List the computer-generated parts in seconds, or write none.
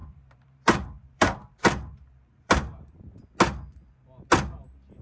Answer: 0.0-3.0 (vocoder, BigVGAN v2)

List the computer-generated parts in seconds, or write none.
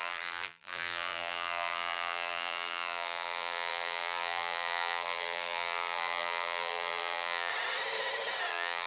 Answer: 0.0-7.5 (vocoder, BigVGAN v2); 8.5-8.9